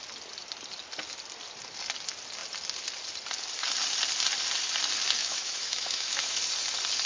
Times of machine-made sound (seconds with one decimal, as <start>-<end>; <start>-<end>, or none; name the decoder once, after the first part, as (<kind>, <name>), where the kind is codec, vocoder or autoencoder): 5.2-6.4 (autoencoder, DAC-VAE)